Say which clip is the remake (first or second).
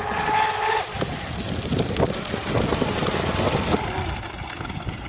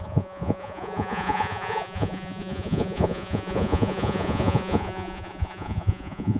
second